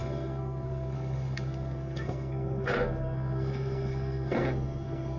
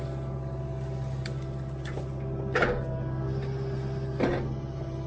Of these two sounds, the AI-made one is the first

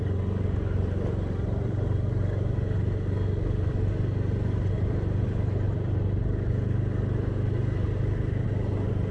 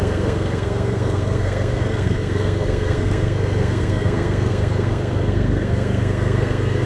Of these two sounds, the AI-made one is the second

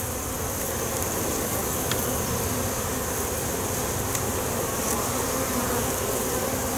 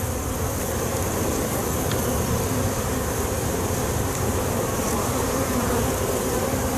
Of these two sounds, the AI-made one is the second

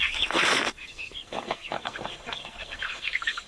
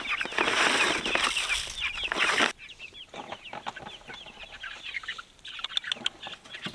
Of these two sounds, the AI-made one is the first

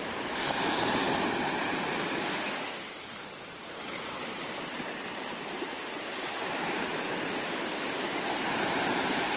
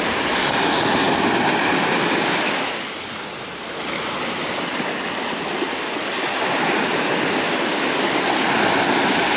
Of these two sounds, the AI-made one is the first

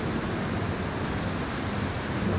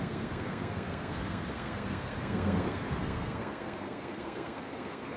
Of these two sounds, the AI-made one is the second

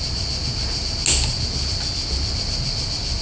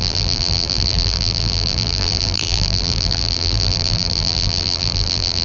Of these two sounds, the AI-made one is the second